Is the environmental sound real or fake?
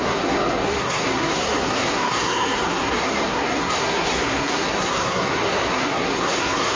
fake